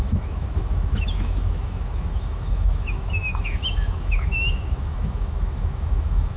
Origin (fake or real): fake